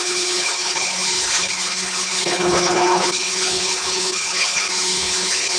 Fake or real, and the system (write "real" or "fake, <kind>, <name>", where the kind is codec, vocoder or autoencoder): fake, codec, HILCodec